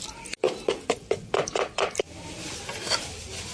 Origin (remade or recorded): recorded